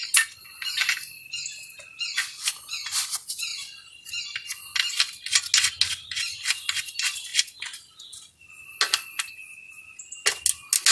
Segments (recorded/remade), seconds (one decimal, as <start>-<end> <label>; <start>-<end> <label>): 0.0-10.9 recorded